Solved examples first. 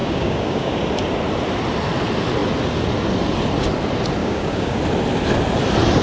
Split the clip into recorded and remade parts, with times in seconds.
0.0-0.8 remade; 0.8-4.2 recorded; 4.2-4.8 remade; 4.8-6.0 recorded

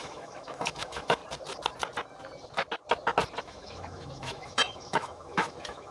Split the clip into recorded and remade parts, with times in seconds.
0.0-1.2 remade; 1.2-3.4 recorded; 3.4-5.9 remade

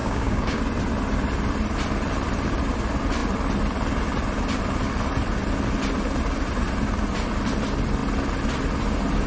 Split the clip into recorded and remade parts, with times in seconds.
0.0-0.6 remade; 0.6-9.3 recorded

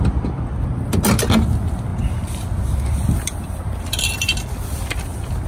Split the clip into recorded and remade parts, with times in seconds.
0.0-5.5 recorded

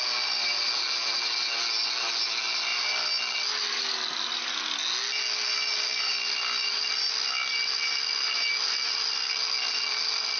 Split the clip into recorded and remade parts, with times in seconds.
0.0-10.4 recorded